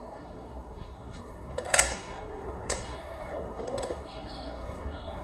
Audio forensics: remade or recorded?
remade